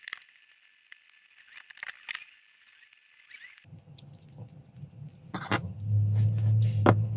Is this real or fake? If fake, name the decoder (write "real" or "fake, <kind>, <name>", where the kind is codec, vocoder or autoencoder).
real